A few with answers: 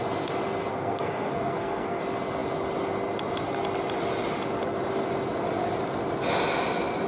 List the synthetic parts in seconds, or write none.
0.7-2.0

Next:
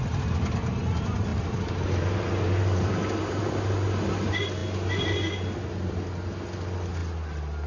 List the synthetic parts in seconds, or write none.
1.3-3.4

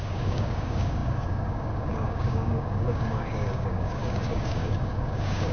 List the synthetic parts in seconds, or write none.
0.0-5.5

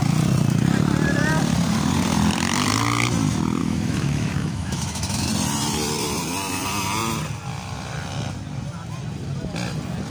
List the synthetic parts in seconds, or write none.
3.6-5.3